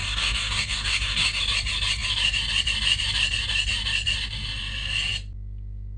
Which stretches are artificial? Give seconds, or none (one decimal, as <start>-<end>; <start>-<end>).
0.0-1.4